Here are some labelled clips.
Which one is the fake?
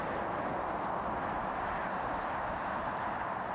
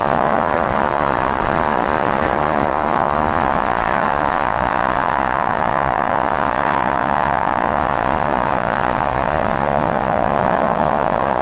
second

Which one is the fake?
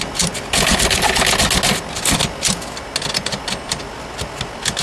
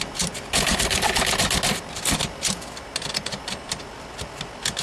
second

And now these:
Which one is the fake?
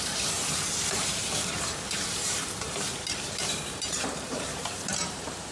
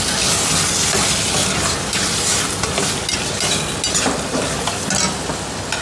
first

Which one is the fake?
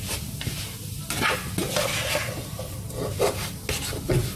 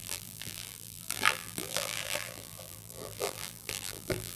second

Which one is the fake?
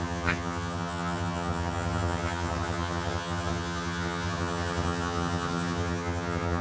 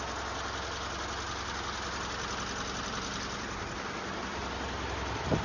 first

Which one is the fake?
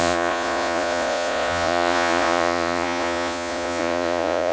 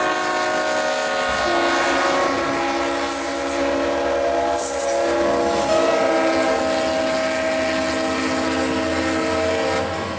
first